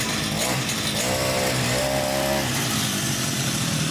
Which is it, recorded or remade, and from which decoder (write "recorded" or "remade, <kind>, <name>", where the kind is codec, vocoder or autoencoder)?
remade, vocoder, BigVGAN v2